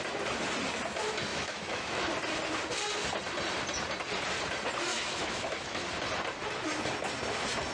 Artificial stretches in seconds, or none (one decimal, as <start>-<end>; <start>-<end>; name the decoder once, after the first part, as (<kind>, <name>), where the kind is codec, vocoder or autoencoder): 1.3-2.1 (autoencoder, DAC-VAE); 4.9-5.8